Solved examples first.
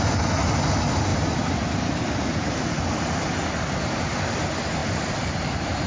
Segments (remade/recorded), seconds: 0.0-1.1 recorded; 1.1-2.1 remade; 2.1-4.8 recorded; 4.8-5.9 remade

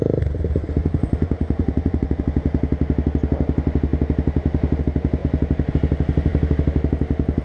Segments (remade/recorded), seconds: 0.0-0.8 recorded; 0.8-2.2 remade; 2.2-7.4 recorded

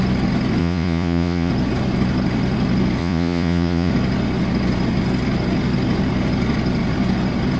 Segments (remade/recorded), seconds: 0.0-0.6 recorded; 0.6-1.5 remade; 1.5-3.0 recorded; 3.0-3.9 remade; 3.9-7.6 recorded

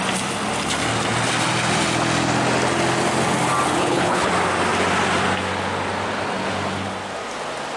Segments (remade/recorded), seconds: 0.0-3.8 recorded; 3.8-4.3 remade; 4.3-7.8 recorded

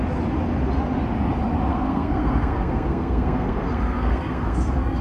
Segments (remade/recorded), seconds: 0.0-1.7 recorded; 1.7-5.0 remade